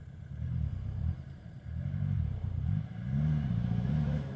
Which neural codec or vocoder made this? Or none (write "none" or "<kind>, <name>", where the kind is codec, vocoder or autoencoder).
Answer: vocoder, BigVGAN v2